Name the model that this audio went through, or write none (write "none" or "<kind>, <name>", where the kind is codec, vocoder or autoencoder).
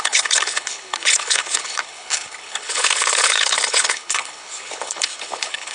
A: codec, HILCodec